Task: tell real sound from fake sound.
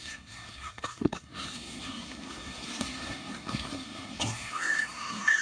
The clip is fake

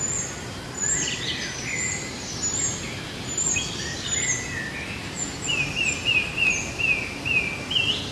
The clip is real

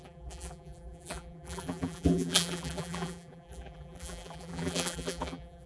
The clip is fake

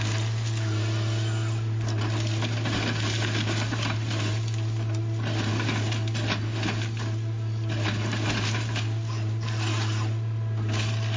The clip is real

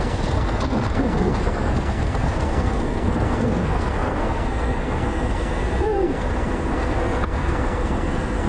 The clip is fake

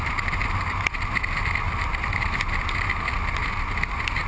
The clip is real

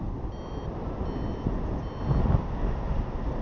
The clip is real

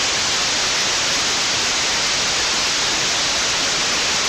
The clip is real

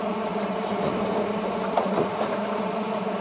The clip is fake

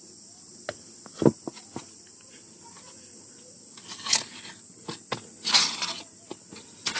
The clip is real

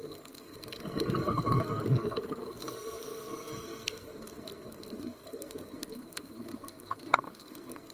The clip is fake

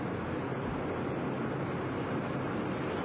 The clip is real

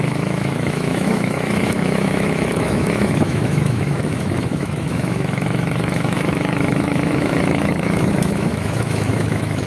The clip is fake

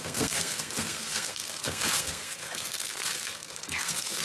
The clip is fake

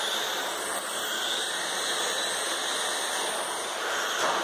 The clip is real